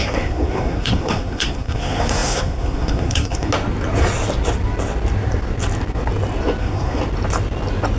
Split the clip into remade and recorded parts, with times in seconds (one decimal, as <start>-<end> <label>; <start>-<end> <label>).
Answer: 0.0-3.5 remade; 3.5-6.6 recorded; 6.6-7.0 remade; 7.0-8.0 recorded

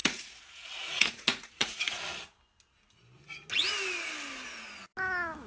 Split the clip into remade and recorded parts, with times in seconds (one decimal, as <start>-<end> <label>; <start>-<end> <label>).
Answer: 0.0-2.0 remade; 2.0-5.5 recorded

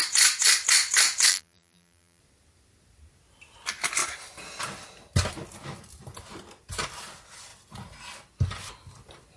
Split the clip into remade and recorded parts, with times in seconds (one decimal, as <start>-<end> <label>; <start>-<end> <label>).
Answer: 0.0-1.3 recorded; 1.3-2.2 remade; 2.2-9.4 recorded

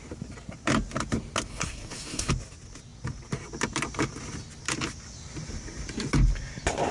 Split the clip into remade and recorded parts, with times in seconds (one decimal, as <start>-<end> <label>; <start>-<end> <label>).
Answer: 0.0-1.5 recorded; 1.5-2.3 remade; 2.3-6.9 recorded